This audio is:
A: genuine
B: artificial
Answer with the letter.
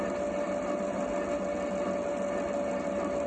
A